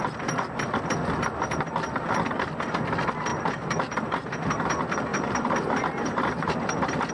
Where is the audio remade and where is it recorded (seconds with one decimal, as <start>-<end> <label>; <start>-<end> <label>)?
0.0-3.3 recorded; 3.3-4.4 remade; 4.4-5.1 recorded; 5.1-7.1 remade